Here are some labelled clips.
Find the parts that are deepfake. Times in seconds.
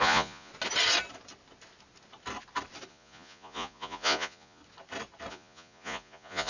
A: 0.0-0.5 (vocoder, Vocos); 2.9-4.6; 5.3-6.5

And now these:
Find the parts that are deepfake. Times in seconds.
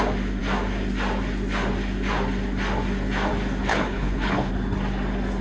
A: 3.7-4.5 (codec, HILCodec)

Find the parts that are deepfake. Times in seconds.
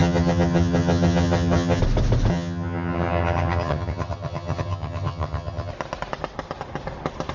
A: 0.0-1.8 (vocoder, HiFi-GAN); 2.3-5.7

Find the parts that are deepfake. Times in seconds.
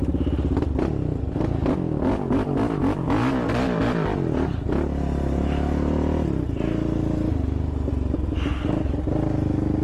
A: none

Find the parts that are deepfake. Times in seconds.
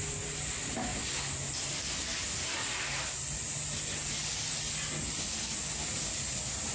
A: none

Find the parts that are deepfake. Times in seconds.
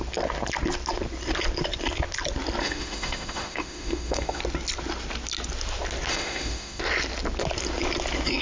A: 2.6-4.4 (autoencoder, DAC-VAE); 6.1-6.8